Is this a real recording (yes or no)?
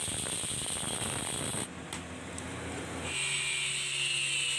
yes